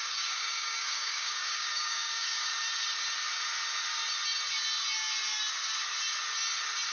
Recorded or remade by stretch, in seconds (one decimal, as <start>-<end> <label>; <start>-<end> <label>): 0.0-2.5 remade; 2.5-6.9 recorded